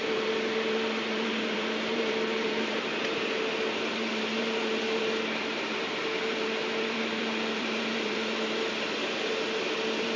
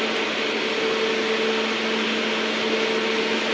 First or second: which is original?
second